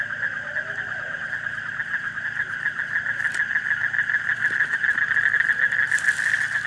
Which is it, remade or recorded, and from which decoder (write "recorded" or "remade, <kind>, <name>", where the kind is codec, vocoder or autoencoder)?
recorded